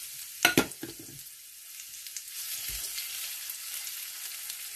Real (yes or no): yes